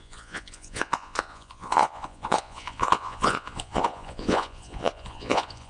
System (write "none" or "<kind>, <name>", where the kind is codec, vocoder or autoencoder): vocoder, Vocos